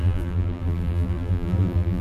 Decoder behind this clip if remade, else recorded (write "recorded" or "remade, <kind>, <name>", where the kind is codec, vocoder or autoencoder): remade, vocoder, BigVGAN v2